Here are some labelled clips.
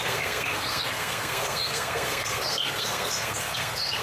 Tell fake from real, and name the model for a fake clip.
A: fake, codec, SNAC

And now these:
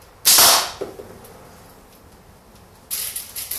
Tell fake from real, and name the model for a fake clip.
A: real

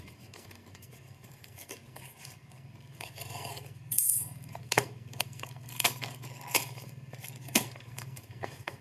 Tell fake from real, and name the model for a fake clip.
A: fake, codec, SNAC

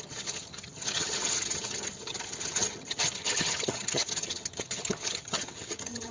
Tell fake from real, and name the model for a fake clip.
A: fake, vocoder, HiFi-GAN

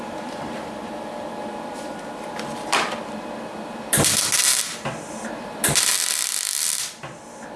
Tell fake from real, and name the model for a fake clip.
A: fake, vocoder, BigVGAN v2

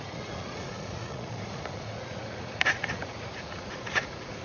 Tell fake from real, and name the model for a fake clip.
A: fake, vocoder, Vocos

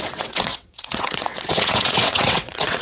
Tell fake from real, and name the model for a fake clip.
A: fake, vocoder, WaveNeXt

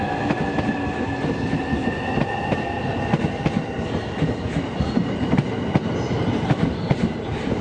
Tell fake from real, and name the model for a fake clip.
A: real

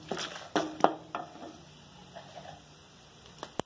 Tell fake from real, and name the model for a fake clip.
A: real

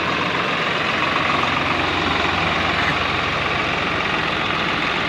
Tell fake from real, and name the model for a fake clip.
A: fake, vocoder, BigVGAN v2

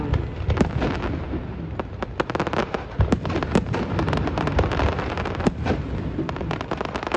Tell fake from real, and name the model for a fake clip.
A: real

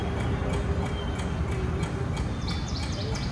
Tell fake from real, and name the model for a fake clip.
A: real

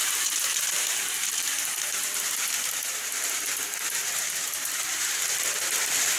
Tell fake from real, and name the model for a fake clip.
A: fake, vocoder, BigVGAN v2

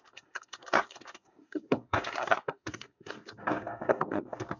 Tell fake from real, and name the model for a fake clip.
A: fake, codec, SNAC